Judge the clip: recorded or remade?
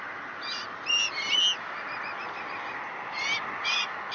recorded